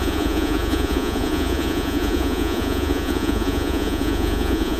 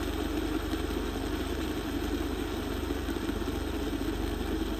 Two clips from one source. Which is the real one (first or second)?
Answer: second